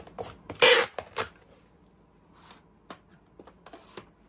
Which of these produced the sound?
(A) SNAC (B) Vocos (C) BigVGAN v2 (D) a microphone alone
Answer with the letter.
D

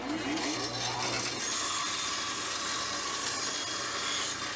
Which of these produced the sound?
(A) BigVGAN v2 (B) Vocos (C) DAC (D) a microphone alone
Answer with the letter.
D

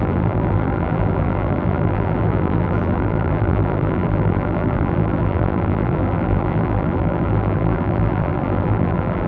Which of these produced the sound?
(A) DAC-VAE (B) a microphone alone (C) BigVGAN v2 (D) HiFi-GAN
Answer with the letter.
C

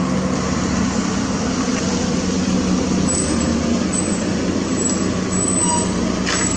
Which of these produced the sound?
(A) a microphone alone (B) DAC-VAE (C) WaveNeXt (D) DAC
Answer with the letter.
A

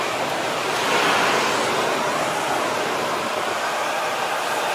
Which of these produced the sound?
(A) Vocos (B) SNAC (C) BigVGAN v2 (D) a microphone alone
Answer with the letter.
D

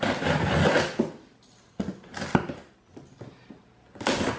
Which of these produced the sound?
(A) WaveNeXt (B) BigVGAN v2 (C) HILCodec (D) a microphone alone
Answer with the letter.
D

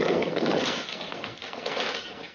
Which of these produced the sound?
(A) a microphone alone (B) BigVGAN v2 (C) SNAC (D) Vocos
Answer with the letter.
C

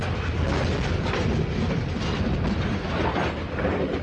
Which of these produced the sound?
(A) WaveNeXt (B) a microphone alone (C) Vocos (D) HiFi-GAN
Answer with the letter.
B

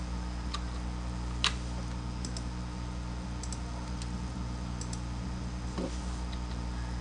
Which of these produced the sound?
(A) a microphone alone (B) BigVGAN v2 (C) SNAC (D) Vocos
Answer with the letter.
A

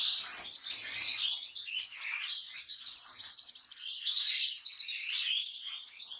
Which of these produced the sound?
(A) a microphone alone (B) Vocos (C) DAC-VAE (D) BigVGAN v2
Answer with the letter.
D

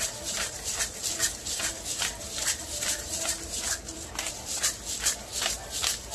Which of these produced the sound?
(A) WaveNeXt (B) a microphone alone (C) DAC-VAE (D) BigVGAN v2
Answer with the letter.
D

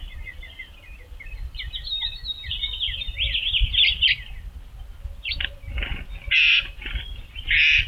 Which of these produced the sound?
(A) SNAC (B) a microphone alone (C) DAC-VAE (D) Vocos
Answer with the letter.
B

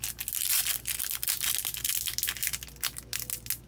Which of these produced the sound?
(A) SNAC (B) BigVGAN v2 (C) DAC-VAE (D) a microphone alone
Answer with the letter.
D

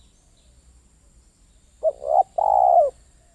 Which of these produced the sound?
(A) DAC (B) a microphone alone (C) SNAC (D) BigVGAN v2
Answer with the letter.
B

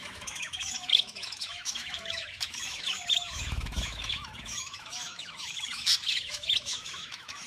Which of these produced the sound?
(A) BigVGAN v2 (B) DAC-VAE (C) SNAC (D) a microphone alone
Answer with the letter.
B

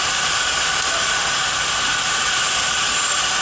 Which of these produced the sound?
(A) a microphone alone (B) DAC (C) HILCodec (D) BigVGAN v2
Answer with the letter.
A